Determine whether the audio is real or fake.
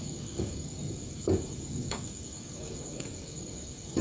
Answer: fake